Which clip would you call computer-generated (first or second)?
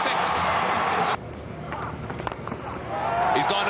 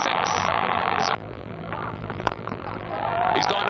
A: second